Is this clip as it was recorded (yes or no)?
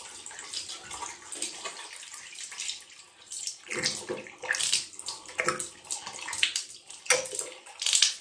yes